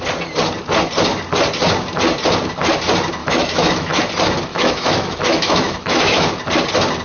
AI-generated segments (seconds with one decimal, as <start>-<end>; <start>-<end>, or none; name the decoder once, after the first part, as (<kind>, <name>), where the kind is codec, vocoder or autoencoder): 3.2-4.0 (autoencoder, DAC-VAE); 4.5-6.3